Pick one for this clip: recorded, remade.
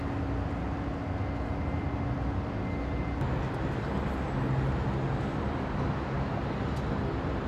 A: recorded